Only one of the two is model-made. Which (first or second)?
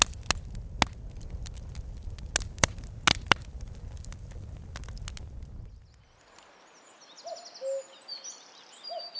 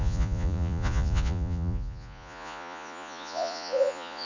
second